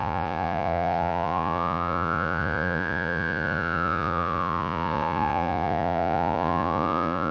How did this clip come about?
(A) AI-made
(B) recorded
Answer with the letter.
A